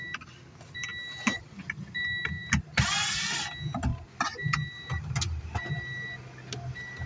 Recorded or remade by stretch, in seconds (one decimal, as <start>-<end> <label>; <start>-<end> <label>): 0.0-7.1 recorded